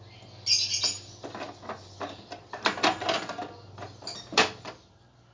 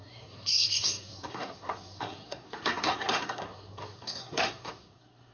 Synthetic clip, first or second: second